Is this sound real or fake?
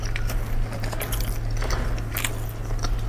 real